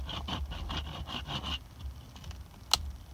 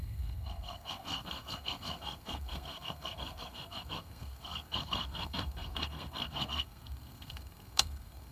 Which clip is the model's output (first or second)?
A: second